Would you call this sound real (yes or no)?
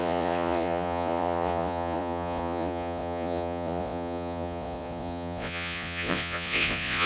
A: no